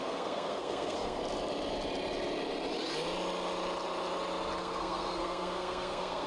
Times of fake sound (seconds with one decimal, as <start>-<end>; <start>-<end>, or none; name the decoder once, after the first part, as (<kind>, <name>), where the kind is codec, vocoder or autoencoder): 0.0-1.2 (codec, SNAC); 4.6-6.3